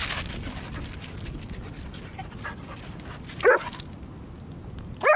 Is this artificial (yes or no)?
no